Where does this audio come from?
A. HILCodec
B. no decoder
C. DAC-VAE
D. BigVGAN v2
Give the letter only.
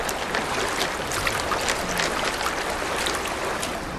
B